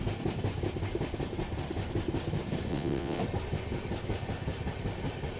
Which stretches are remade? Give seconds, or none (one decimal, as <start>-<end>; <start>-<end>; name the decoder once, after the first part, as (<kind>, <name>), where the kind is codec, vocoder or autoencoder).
2.7-3.2 (vocoder, WaveNeXt)